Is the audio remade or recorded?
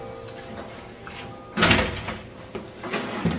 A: recorded